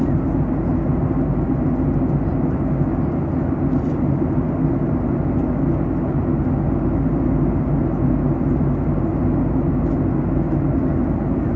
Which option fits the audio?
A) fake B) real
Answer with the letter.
B